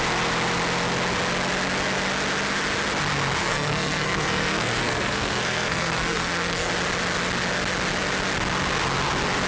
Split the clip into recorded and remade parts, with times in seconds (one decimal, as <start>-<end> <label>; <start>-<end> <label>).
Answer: 0.0-3.4 recorded; 3.4-6.7 remade; 6.7-9.5 recorded